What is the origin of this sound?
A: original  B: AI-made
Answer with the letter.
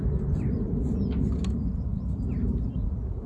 A